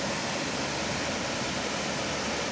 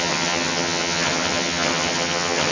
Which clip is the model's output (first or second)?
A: second